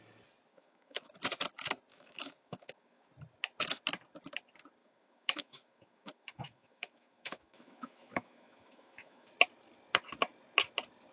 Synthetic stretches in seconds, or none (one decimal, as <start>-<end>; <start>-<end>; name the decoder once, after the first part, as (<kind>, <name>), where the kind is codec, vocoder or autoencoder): 0.5-1.1 (autoencoder, DAC-VAE); 1.9-3.1; 4.8-9.3